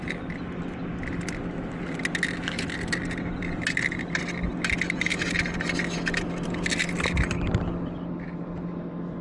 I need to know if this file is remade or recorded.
recorded